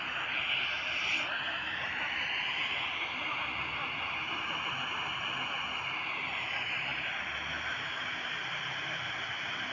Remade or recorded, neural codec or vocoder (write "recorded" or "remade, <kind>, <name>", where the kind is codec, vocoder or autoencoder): recorded